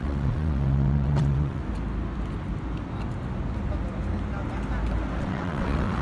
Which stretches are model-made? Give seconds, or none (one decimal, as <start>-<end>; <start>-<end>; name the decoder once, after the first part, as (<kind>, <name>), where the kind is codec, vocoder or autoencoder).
0.0-1.6 (vocoder, WaveNeXt); 5.2-6.0